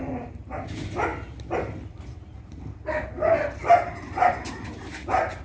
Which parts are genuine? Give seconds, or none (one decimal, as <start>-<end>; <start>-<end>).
0.0-5.4